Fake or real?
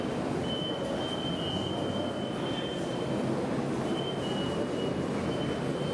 real